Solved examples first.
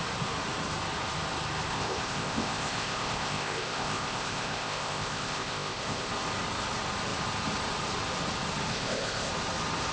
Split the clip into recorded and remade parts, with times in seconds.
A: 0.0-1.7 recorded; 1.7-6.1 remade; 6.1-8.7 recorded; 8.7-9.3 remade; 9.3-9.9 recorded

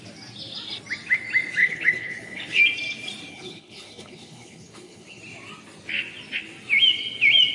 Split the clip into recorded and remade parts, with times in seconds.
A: 0.0-1.6 recorded; 1.6-2.6 remade; 2.6-3.3 recorded; 3.3-5.2 remade; 5.2-7.5 recorded

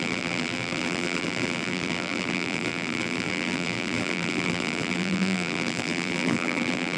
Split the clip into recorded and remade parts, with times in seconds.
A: 0.0-7.0 remade

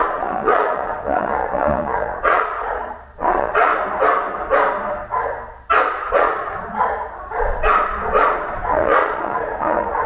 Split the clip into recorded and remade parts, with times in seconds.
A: 0.0-3.7 remade; 3.7-6.1 recorded; 6.1-10.1 remade

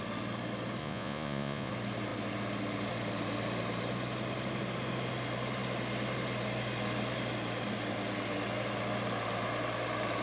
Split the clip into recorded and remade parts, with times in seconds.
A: 0.0-0.8 recorded; 0.8-1.7 remade; 1.7-10.2 recorded

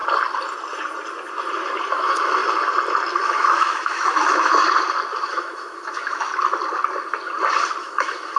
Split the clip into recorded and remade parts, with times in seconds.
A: 0.0-1.9 recorded; 1.9-2.4 remade; 2.4-3.2 recorded; 3.2-4.6 remade; 4.6-5.3 recorded; 5.3-6.3 remade; 6.3-7.8 recorded; 7.8-8.4 remade